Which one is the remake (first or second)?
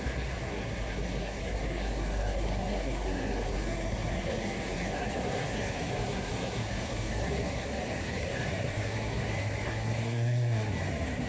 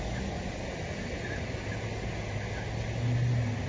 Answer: first